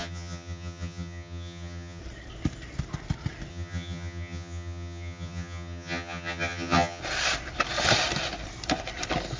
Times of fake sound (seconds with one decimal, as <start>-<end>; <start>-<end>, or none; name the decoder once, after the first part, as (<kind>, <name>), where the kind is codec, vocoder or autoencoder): 0.0-2.0 (vocoder, HiFi-GAN); 3.5-7.0